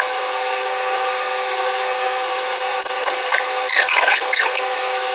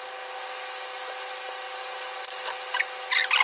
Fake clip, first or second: first